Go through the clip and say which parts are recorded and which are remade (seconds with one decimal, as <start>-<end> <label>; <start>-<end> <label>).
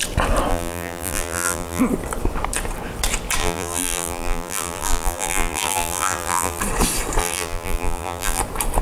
0.0-0.5 recorded; 0.5-1.8 remade; 1.8-3.4 recorded; 3.4-6.6 remade; 6.6-7.2 recorded; 7.2-8.4 remade; 8.4-8.8 recorded